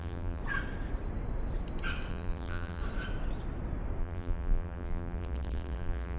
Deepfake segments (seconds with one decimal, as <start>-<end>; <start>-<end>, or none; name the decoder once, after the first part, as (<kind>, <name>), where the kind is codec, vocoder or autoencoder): 0.0-0.4 (vocoder, BigVGAN v2); 2.1-2.8; 4.0-6.2